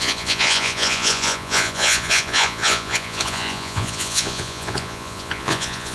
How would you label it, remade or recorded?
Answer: remade